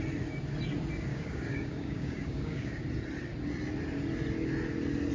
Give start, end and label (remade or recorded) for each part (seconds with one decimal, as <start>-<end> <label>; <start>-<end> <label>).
0.0-1.1 recorded; 1.1-2.8 remade; 2.8-5.1 recorded